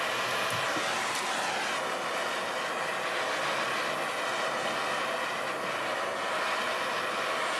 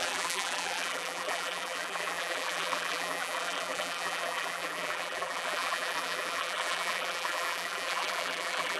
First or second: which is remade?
second